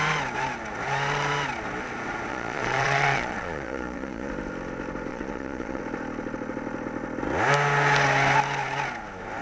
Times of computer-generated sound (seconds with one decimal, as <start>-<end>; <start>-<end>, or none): 2.3-4.3; 5.1-5.8